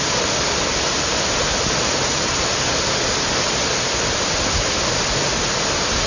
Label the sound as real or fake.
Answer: real